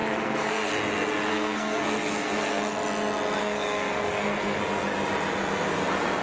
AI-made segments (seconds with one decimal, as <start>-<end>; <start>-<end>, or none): 0.0-0.7; 1.3-2.6; 3.4-4.6